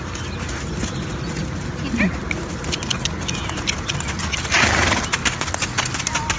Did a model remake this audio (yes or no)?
no